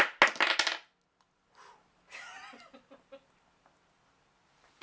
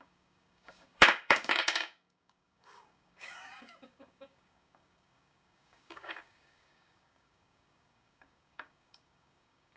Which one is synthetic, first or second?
second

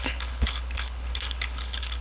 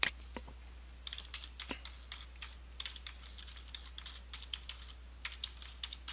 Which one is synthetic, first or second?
first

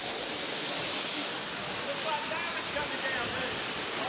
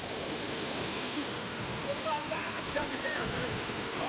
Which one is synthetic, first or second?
second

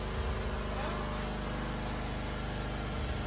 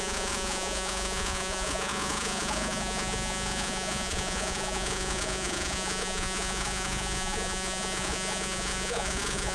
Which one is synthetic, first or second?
second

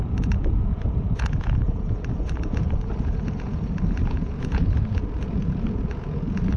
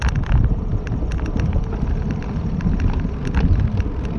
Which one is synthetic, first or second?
first